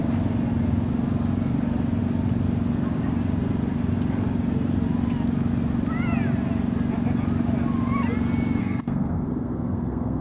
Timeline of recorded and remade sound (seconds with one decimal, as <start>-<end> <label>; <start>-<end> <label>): 0.0-8.6 recorded; 8.6-10.2 remade